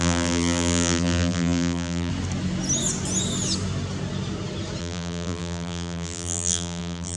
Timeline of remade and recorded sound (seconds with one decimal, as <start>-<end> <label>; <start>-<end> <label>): 0.0-2.1 remade; 2.1-4.8 recorded; 4.8-7.2 remade